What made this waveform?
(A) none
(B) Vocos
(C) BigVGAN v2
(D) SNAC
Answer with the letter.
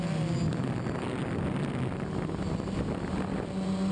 A